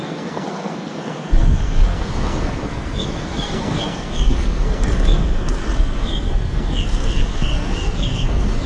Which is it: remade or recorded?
remade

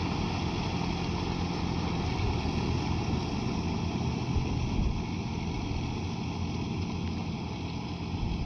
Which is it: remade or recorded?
recorded